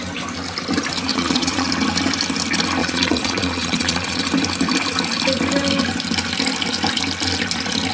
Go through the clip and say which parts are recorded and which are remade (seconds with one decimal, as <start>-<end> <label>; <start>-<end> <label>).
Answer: 0.0-1.1 recorded; 1.1-1.7 remade; 1.7-2.8 recorded; 2.8-4.2 remade; 4.2-7.9 recorded

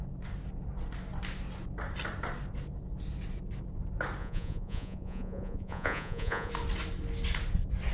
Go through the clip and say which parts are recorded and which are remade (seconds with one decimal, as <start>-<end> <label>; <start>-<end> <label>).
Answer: 0.0-4.2 recorded; 4.2-6.5 remade; 6.5-7.9 recorded

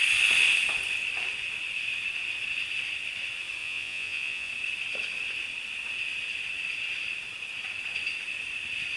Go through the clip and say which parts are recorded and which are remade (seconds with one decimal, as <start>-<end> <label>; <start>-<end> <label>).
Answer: 0.0-3.6 recorded; 3.6-4.5 remade; 4.5-9.0 recorded

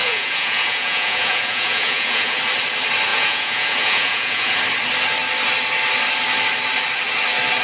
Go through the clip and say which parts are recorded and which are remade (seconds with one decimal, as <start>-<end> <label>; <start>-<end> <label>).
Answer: 0.0-2.4 remade; 2.4-3.1 recorded; 3.1-4.6 remade; 4.6-7.6 recorded

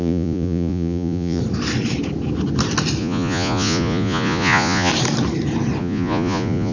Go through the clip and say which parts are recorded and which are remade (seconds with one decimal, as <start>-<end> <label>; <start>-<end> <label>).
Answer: 0.0-1.4 remade; 1.4-3.0 recorded; 3.0-4.9 remade; 4.9-5.8 recorded; 5.8-6.7 remade

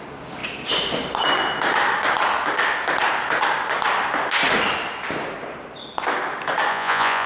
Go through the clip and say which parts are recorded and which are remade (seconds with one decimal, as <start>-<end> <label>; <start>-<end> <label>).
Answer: 0.0-6.7 recorded; 6.7-7.3 remade